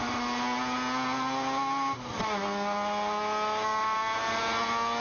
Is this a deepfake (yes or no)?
no